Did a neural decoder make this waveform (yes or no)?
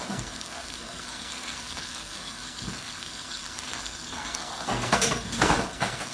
yes